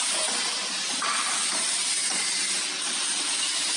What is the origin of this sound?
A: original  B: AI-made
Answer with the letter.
A